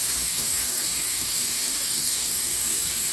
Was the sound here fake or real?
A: fake